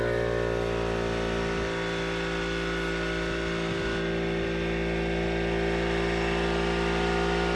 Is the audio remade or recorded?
recorded